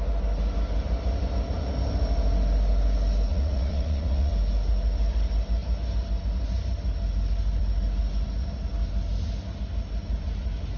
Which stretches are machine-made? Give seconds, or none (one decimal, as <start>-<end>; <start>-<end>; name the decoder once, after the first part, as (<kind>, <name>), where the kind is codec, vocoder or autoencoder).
3.3-4.3 (vocoder, Vocos)